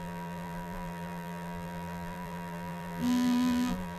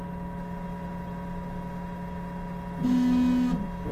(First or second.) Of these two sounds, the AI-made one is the first